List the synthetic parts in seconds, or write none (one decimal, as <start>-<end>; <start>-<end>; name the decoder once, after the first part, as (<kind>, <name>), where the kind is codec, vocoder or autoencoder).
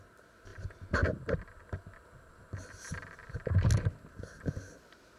3.2-4.4 (vocoder, BigVGAN v2)